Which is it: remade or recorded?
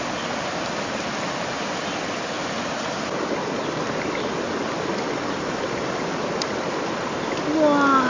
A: recorded